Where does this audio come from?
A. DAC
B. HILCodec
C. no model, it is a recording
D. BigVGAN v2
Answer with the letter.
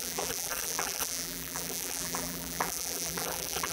D